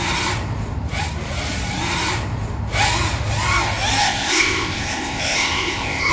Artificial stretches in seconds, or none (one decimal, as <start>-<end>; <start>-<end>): 4.0-6.1

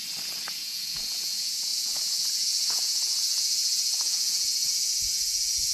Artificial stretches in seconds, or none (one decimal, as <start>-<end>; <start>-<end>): 0.6-5.7

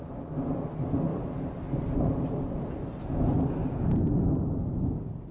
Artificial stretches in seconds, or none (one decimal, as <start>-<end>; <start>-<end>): 1.1-2.1; 3.6-4.4

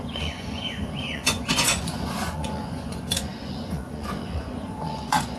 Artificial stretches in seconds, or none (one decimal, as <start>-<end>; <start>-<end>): 0.0-5.4